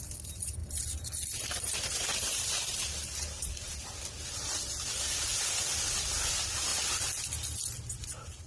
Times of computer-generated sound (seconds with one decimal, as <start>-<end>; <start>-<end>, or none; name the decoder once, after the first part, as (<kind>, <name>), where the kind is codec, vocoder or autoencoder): none